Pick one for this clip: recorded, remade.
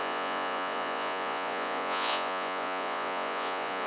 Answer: remade